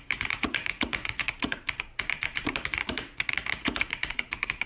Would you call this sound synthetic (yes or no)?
yes